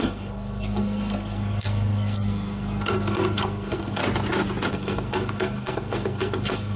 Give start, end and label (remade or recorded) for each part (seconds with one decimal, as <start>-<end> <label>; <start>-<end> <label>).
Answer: 0.0-4.0 remade; 4.0-4.7 recorded; 4.7-6.8 remade